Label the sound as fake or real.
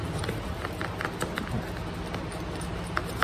real